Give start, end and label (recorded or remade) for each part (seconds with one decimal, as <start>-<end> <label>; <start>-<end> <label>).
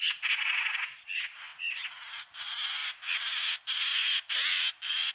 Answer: 0.0-5.1 recorded